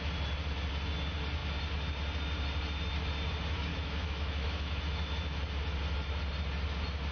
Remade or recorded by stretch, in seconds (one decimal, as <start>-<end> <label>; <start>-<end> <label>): 0.0-3.7 recorded; 3.7-4.8 remade; 4.8-7.1 recorded